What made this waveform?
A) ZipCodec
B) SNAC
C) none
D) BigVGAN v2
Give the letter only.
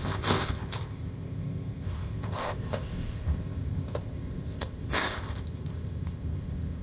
A